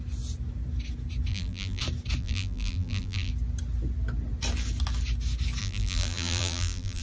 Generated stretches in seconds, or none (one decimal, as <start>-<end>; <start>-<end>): 1.3-1.8; 2.2-3.3; 5.6-7.0